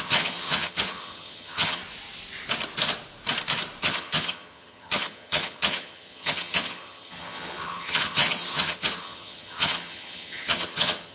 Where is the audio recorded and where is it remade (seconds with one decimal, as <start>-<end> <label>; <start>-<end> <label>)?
0.0-1.8 remade; 1.8-3.8 recorded; 3.8-11.1 remade